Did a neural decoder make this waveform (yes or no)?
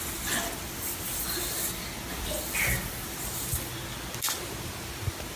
no